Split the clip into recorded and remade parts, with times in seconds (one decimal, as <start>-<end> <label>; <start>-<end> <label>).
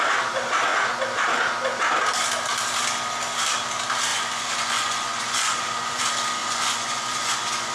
0.0-4.1 recorded; 4.1-6.0 remade; 6.0-6.4 recorded; 6.4-7.7 remade